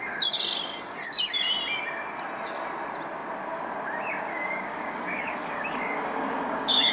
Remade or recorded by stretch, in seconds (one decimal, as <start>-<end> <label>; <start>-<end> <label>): 0.0-4.3 recorded; 4.3-6.9 remade